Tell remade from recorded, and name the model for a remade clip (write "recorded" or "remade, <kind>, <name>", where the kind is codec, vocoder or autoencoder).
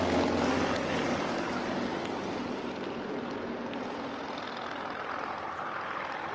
recorded